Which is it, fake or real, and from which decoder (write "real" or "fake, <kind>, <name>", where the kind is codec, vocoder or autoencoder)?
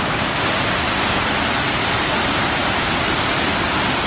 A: real